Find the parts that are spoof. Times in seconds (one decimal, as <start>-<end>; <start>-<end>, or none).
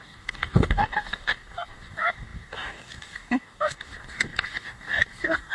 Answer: 0.0-5.5